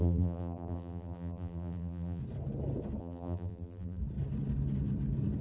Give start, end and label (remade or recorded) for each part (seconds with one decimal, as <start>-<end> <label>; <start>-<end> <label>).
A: 0.0-2.2 remade; 2.2-3.0 recorded; 3.0-4.0 remade; 4.0-5.4 recorded